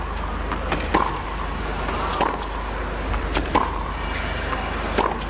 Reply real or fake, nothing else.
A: real